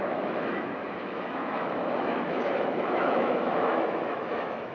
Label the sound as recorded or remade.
remade